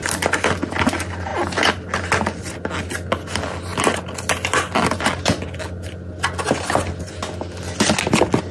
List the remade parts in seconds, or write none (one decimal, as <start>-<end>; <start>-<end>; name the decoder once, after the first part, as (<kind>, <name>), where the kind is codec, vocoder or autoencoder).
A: none